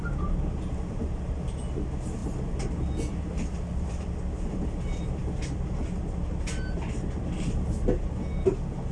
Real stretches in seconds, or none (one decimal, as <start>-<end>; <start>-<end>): 0.0-8.9